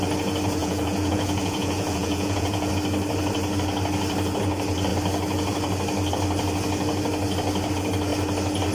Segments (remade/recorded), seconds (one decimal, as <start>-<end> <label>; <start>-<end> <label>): 0.0-0.6 recorded; 0.6-2.7 remade; 2.7-8.7 recorded